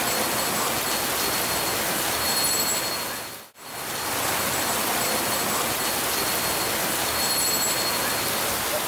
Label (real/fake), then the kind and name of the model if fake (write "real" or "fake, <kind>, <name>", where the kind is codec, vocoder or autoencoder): real